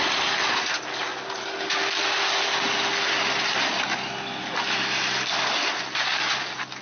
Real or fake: real